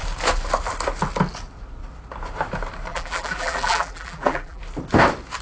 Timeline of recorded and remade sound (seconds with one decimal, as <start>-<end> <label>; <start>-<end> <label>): 0.0-2.9 recorded; 2.9-4.6 remade; 4.6-5.4 recorded